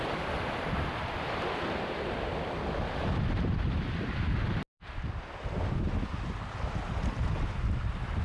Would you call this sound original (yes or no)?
yes